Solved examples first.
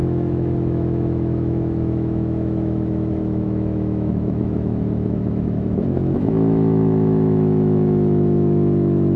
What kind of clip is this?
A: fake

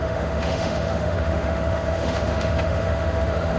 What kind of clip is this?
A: fake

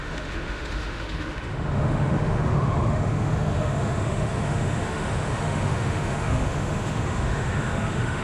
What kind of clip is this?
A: fake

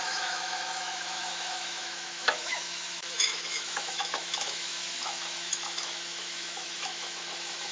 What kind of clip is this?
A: fake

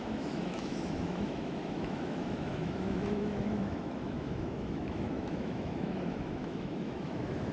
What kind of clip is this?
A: fake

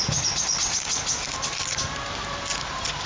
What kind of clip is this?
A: real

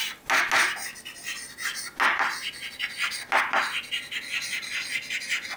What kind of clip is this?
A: real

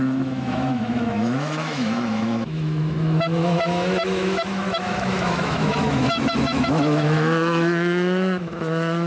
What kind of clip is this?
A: fake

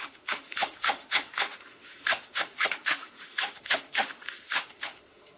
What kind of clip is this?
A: fake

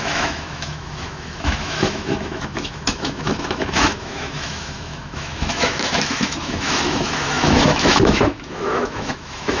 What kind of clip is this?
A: fake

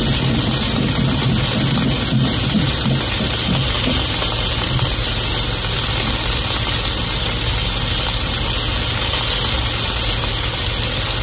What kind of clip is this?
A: real